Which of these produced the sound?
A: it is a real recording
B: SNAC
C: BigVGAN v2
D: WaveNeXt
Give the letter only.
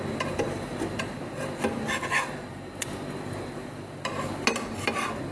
A